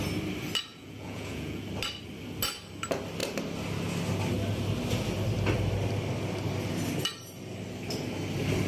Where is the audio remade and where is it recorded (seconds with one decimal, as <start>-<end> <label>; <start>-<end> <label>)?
0.0-0.7 recorded; 0.7-1.6 remade; 1.6-8.7 recorded